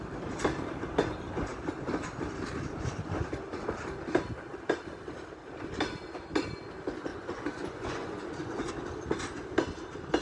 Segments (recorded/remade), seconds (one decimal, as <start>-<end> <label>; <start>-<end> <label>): 0.0-7.1 recorded; 7.1-8.7 remade; 8.7-10.2 recorded